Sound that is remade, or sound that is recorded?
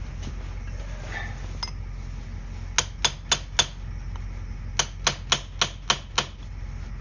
recorded